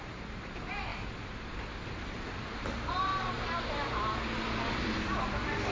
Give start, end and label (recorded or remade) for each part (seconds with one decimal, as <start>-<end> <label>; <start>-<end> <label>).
0.0-3.1 remade; 3.1-4.7 recorded; 4.7-5.7 remade